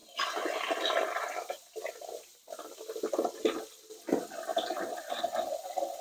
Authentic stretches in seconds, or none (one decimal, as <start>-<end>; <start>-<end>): 0.0-6.0